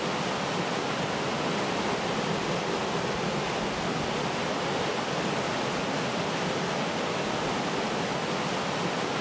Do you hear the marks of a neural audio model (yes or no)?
no